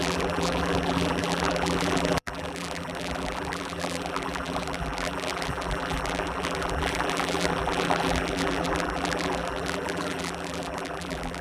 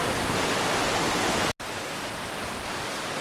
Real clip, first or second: second